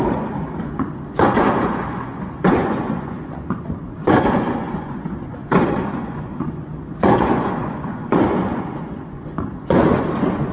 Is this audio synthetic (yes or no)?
yes